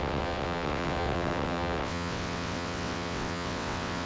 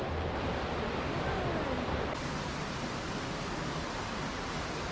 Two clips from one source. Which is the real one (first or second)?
second